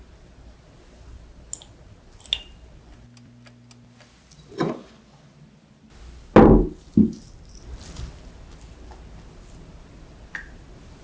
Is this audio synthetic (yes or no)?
no